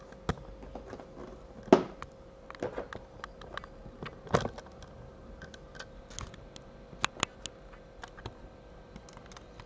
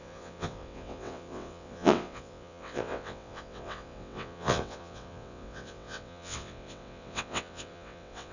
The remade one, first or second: second